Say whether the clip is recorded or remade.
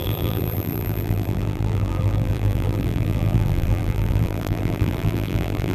remade